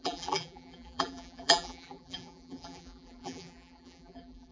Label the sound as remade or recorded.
remade